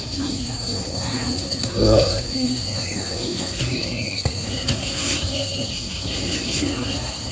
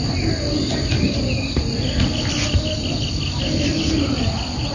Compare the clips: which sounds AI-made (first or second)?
first